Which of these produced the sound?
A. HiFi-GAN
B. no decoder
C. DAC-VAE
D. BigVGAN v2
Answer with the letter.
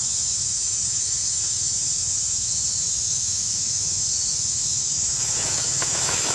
C